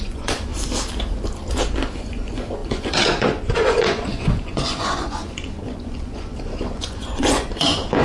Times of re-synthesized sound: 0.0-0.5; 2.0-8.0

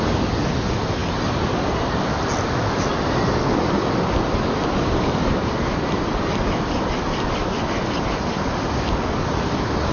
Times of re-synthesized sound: none

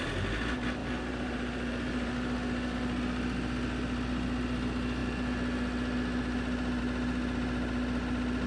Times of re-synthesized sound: 0.8-2.1

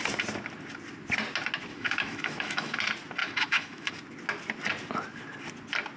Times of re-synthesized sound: 1.7-2.8; 3.2-3.9

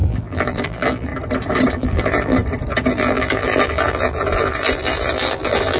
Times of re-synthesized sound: 0.0-1.1; 1.7-2.4; 2.9-5.8